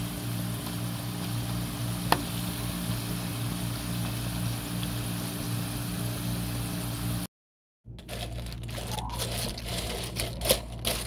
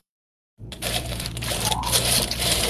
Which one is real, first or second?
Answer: first